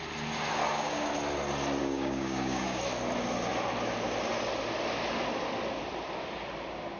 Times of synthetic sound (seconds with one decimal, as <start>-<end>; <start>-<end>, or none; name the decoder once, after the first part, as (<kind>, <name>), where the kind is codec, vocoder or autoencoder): 0.6-1.1 (codec, DAC); 1.8-2.8